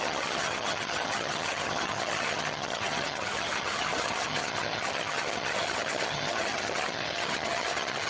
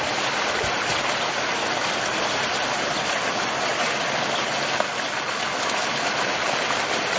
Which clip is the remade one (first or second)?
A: first